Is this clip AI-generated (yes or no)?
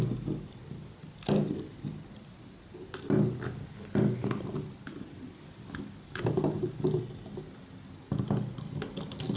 no